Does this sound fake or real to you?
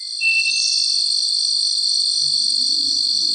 real